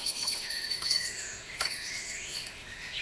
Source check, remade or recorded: remade